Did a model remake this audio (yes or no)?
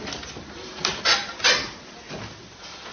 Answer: no